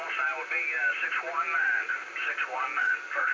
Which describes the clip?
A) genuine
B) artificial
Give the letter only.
A